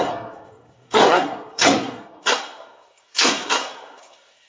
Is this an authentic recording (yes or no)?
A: no